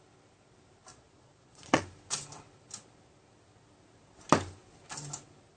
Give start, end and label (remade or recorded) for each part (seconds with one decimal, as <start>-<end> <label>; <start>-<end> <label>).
0.0-0.9 recorded; 0.9-1.8 remade; 1.8-5.6 recorded